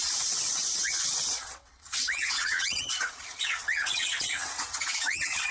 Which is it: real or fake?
fake